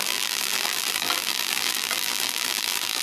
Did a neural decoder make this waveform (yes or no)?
yes